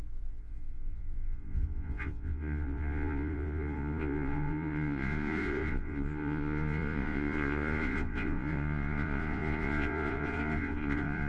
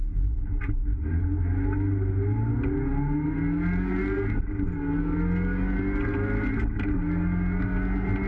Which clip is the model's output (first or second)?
first